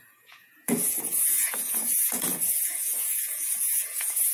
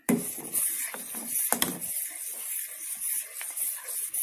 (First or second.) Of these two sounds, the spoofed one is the first